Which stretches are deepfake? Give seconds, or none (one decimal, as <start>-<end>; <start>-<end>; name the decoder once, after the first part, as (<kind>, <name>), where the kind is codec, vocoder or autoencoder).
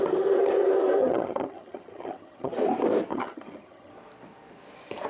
1.0-2.5 (vocoder, HiFi-GAN); 3.1-3.9